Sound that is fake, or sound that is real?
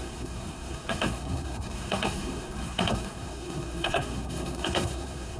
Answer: fake